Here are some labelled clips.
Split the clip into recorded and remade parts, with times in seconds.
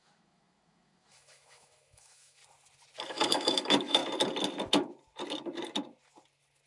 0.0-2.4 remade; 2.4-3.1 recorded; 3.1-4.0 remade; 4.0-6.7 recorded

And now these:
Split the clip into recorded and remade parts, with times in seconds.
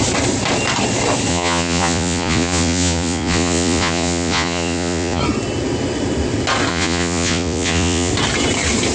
0.0-1.3 recorded; 1.3-5.2 remade; 5.2-6.7 recorded; 6.7-8.1 remade; 8.1-8.9 recorded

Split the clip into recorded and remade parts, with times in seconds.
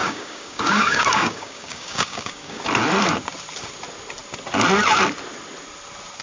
0.0-2.6 remade; 2.6-6.2 recorded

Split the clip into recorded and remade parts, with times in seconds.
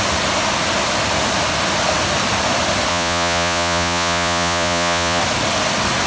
0.0-2.9 recorded; 2.9-5.2 remade; 5.2-6.1 recorded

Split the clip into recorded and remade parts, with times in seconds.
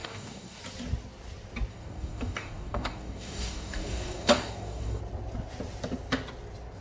0.0-0.6 remade; 0.6-1.7 recorded; 1.7-5.0 remade; 5.0-6.8 recorded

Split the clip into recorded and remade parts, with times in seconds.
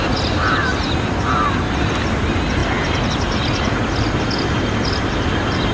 0.0-5.7 recorded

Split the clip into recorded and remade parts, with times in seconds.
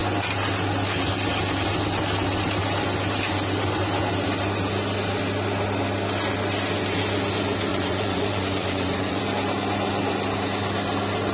0.0-7.7 recorded; 7.7-9.2 remade; 9.2-11.3 recorded